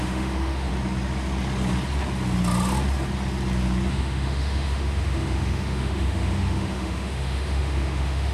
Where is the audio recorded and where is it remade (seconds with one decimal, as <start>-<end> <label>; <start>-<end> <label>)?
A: 0.0-0.7 remade; 0.7-3.9 recorded; 3.9-8.3 remade